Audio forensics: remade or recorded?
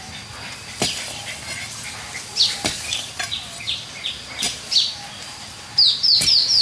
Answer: recorded